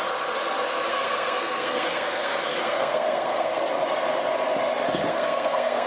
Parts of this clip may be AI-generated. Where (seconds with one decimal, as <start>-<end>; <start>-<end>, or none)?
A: 0.9-3.6; 5.1-5.9